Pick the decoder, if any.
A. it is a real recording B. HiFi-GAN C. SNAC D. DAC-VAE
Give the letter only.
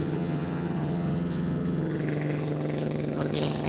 B